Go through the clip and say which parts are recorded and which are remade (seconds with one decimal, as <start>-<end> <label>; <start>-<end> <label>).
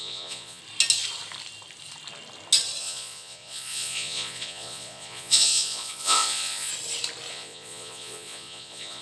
0.0-0.6 remade; 0.6-2.8 recorded; 2.8-6.7 remade; 6.7-7.3 recorded; 7.3-9.0 remade